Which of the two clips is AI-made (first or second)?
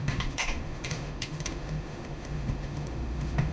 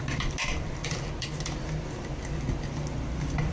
first